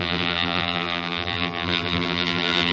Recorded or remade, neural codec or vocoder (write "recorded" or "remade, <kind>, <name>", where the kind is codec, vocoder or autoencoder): remade, vocoder, BigVGAN v2